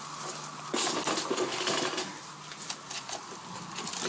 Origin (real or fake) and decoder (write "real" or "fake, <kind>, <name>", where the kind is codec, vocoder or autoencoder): real